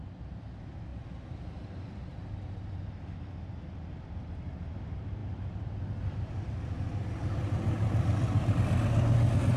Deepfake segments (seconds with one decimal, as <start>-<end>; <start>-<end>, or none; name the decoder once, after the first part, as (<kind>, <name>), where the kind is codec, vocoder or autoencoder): 5.2-8.5 (vocoder, BigVGAN v2)